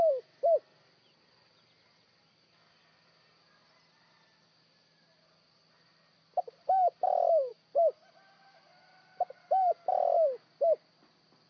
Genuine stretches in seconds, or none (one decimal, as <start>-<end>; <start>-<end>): 0.0-11.5